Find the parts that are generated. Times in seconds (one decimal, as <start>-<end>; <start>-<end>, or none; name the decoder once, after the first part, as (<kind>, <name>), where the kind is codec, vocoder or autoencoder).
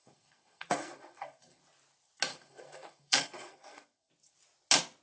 0.0-1.6 (codec, SNAC); 2.3-4.1